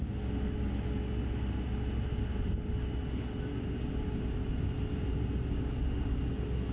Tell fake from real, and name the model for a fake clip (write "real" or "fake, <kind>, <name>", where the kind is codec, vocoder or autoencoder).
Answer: real